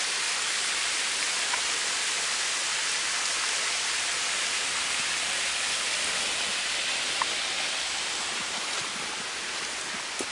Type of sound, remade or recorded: recorded